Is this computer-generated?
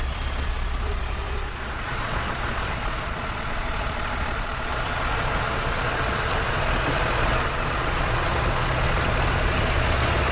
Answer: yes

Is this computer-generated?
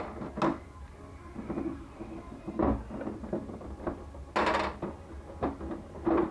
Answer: no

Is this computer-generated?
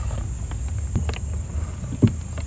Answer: no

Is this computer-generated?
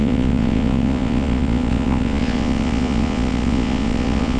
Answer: yes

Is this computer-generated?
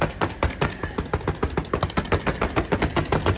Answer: no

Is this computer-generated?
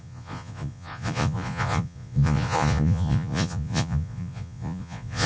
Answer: yes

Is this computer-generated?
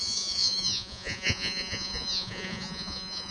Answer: yes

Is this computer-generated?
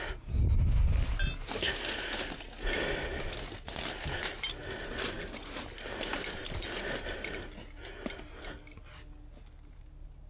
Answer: no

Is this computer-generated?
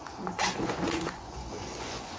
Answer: yes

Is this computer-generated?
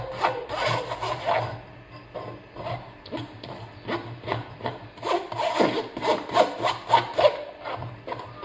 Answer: no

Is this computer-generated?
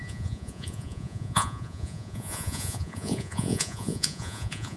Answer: yes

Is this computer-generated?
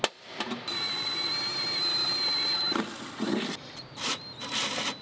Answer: no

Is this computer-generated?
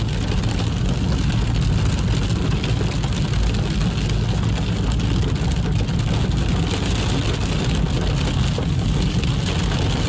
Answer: no